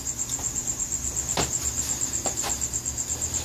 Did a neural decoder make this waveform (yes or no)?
no